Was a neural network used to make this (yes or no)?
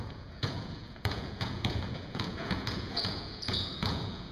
yes